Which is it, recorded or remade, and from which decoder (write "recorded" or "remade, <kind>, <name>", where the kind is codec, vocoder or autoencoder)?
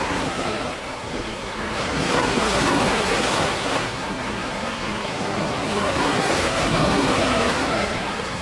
remade, codec, SNAC